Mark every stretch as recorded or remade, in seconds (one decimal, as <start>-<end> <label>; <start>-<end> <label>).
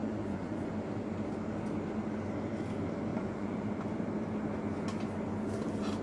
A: 0.0-0.7 remade; 0.7-3.1 recorded; 3.1-3.7 remade; 3.7-6.0 recorded